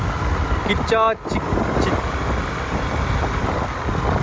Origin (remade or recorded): recorded